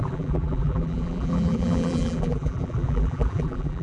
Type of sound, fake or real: fake